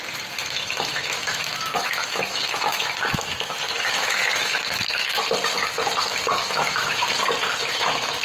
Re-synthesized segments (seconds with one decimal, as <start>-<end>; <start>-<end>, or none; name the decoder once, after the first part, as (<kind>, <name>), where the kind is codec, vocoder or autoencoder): 0.4-5.2 (autoencoder, DAC-VAE); 6.1-7.1; 7.6-8.2